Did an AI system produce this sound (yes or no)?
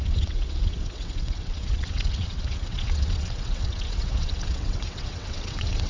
yes